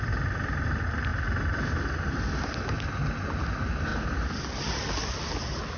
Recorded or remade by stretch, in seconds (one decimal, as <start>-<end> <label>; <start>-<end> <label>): 0.0-1.1 recorded; 1.1-2.2 remade; 2.2-3.9 recorded; 3.9-4.9 remade; 4.9-5.8 recorded